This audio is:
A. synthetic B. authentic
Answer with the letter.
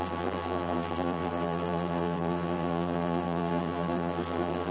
A